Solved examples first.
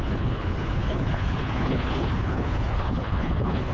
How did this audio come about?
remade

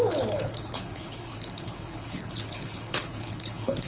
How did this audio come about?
remade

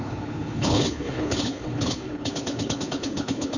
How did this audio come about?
remade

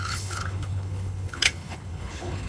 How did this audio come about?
remade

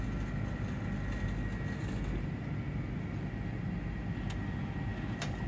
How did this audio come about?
recorded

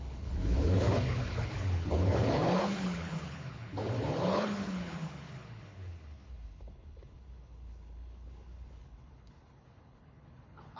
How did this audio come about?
remade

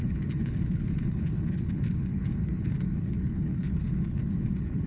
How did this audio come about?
remade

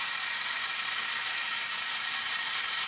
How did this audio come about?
recorded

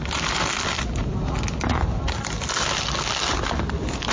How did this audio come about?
recorded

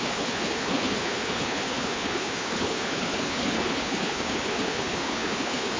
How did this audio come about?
remade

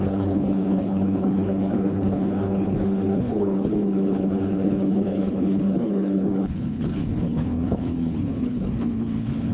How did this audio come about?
remade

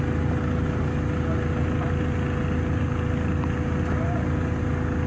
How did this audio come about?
recorded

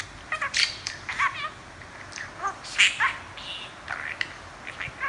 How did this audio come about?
recorded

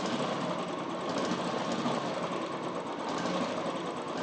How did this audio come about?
recorded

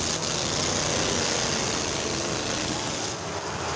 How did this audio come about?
recorded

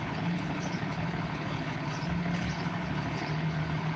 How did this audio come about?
remade